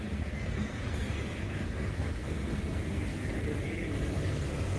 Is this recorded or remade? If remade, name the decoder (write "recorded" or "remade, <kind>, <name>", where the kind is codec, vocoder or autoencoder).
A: remade, codec, SNAC